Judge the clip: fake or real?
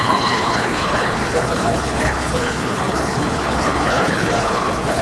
fake